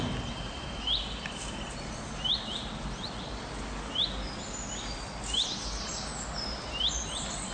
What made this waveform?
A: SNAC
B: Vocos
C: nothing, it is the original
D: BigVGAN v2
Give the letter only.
C